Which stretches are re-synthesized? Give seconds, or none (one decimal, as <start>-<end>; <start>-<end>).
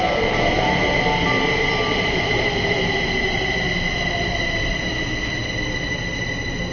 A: none